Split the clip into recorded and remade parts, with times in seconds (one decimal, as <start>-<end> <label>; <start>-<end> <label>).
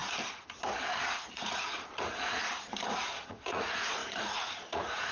0.0-1.1 recorded; 1.1-2.4 remade; 2.4-2.9 recorded; 2.9-5.1 remade